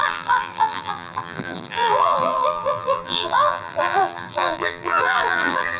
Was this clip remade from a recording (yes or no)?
yes